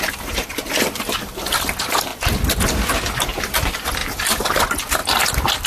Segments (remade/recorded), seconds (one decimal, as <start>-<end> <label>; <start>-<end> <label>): 0.0-5.0 remade; 5.0-5.7 recorded